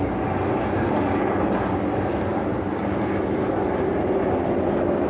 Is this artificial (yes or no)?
no